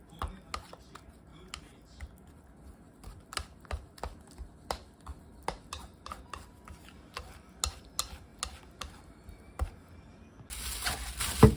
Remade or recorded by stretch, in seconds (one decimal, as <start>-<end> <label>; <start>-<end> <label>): 0.0-11.6 recorded